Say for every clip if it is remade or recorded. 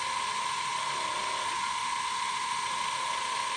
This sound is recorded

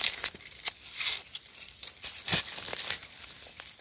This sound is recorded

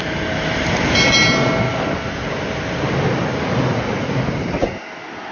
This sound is recorded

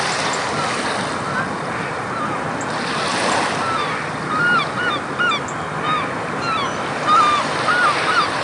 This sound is recorded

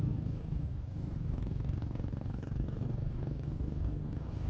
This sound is remade